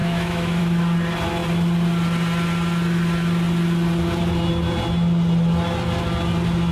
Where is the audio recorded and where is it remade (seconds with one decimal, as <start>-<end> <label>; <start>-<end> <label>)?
0.0-0.6 remade; 0.6-6.7 recorded